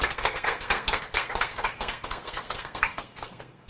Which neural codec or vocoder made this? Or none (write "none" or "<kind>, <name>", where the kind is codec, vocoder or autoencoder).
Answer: codec, SNAC